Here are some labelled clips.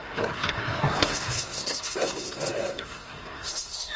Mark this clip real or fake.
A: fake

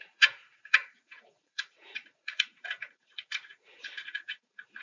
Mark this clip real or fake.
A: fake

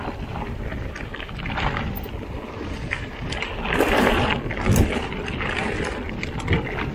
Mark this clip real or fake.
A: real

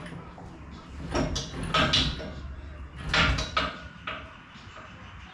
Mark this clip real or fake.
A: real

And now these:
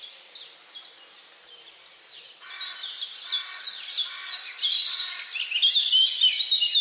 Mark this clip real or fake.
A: real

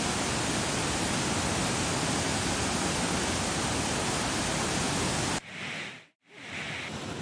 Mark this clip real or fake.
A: real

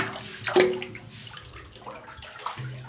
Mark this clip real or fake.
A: real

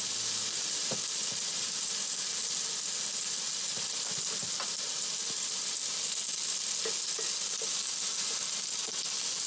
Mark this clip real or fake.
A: real